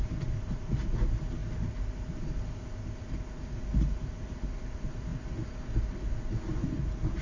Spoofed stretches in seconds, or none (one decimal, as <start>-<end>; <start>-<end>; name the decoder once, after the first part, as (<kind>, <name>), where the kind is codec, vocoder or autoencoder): none